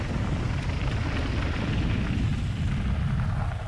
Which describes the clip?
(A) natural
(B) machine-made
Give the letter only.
A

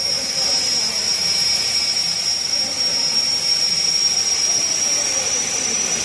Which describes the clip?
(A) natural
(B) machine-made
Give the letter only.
A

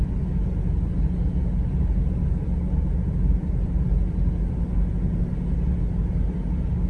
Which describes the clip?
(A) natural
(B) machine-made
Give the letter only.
A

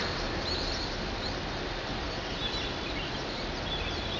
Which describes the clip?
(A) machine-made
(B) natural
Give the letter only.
B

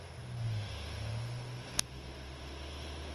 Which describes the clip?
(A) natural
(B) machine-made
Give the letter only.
B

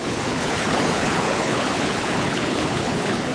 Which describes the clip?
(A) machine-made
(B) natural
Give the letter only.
A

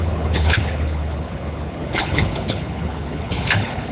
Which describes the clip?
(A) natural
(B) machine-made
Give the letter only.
B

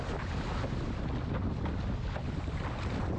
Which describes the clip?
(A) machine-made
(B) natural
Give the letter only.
B